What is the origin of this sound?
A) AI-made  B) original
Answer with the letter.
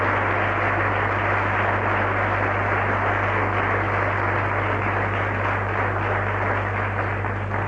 B